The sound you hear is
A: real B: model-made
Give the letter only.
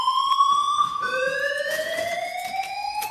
B